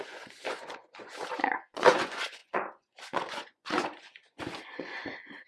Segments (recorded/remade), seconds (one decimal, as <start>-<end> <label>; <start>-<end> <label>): 0.0-5.5 remade